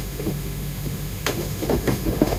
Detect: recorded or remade remade